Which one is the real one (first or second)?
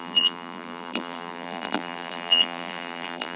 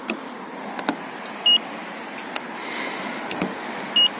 second